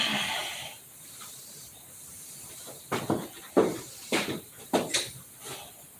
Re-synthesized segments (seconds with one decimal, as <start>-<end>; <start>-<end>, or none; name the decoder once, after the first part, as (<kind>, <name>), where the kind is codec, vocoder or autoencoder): 0.4-1.4 (vocoder, BigVGAN v2); 3.7-5.1